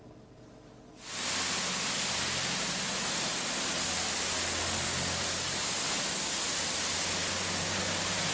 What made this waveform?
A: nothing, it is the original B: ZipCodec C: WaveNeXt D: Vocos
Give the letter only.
A